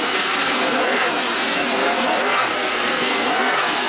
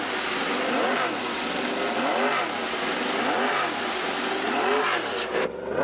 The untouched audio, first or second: second